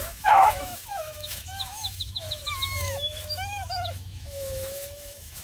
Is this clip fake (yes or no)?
yes